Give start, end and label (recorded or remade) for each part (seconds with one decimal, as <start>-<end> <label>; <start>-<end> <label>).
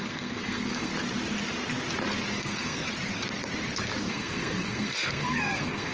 0.0-0.9 remade; 0.9-2.4 recorded; 2.4-2.8 remade; 2.8-4.1 recorded; 4.1-5.9 remade